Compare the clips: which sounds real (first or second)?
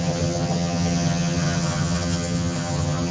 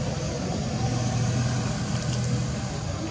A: second